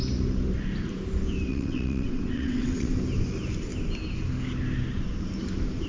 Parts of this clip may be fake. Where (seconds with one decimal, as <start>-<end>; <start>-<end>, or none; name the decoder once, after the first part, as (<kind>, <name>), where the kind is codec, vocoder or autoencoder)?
1.5-2.9 (vocoder, WaveNeXt)